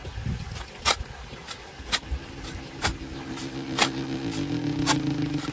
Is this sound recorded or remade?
recorded